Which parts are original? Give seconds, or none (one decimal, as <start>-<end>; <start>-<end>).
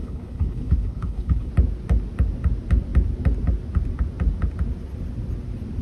1.5-5.8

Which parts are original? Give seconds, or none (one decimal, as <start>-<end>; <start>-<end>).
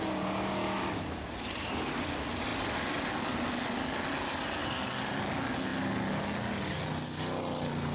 0.0-7.9